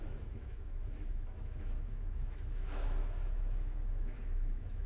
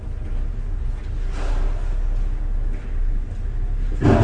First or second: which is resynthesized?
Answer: first